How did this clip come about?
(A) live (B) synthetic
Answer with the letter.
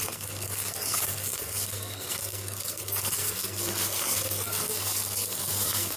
B